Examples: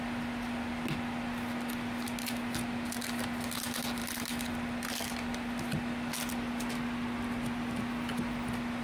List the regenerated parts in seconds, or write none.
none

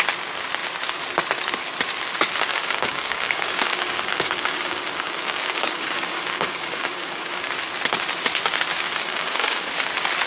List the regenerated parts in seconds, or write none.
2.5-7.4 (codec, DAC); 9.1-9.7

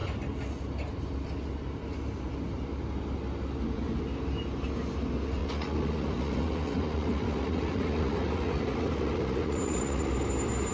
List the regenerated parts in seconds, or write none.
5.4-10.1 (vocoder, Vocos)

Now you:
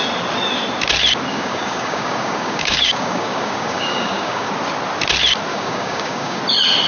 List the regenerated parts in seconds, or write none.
1.3-4.5 (codec, DAC); 5.5-6.4

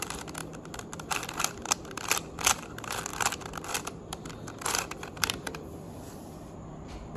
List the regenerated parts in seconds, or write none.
0.0-0.4 (vocoder, BigVGAN v2); 1.1-7.2

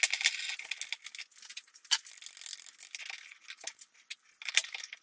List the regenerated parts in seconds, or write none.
none

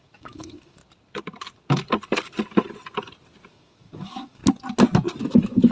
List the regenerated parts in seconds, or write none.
0.0-0.8 (autoencoder, DAC-VAE); 3.5-4.4; 5.2-5.7